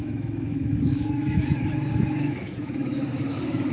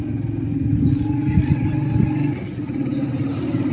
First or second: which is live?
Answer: second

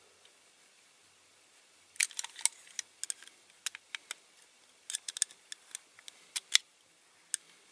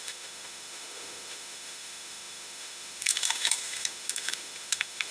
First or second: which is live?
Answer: first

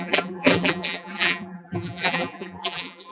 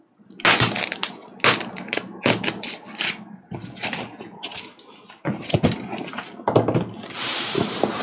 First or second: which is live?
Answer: second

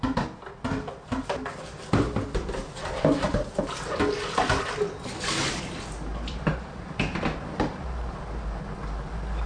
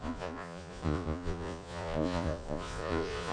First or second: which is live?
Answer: first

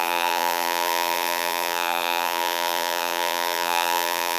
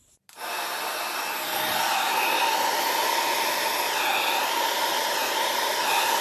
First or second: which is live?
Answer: second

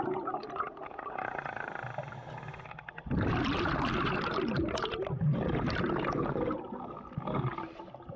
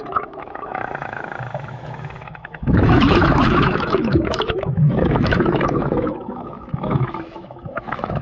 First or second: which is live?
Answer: first